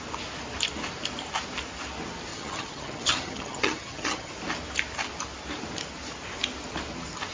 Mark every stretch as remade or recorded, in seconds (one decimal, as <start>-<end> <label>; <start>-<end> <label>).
0.0-2.3 recorded; 2.3-4.3 remade; 4.3-7.3 recorded